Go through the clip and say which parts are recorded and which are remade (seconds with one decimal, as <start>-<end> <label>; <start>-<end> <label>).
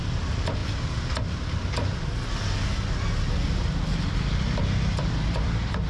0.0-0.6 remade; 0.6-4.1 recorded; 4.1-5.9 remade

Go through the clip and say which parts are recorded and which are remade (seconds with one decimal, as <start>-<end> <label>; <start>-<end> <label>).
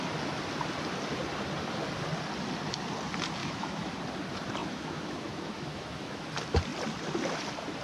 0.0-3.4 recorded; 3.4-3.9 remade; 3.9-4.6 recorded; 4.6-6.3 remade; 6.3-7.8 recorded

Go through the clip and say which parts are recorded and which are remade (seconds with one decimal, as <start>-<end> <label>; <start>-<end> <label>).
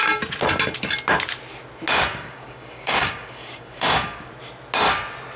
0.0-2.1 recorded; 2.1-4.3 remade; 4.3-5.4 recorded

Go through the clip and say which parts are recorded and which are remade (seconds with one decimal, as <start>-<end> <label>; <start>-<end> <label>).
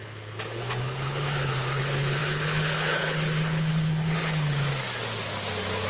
0.0-4.7 remade; 4.7-5.9 recorded